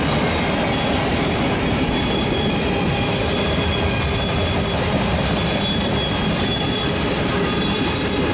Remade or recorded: recorded